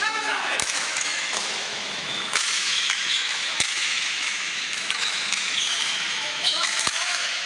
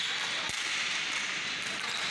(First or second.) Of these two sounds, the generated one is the first